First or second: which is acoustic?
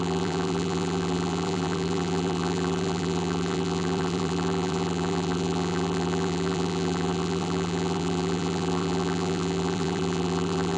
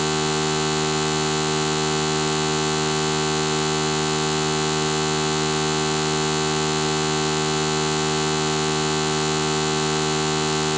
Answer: second